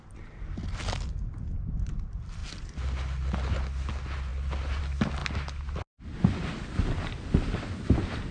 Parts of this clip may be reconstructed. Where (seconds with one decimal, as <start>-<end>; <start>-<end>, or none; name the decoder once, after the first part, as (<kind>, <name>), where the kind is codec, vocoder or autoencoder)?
none